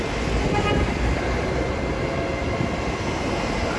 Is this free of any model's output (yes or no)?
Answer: yes